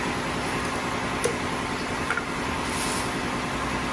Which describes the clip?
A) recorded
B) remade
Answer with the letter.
A